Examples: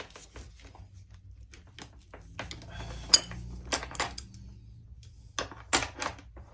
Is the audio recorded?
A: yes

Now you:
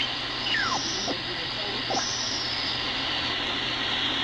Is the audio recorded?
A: yes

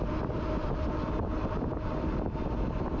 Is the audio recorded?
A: yes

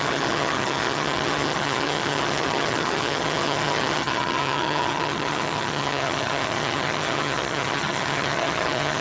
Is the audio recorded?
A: no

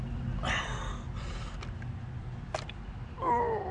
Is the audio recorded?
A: yes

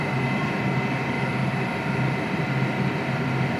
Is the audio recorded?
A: yes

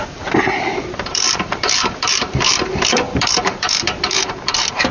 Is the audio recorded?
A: no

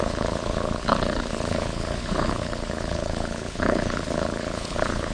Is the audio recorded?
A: no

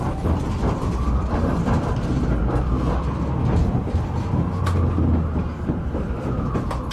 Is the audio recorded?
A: yes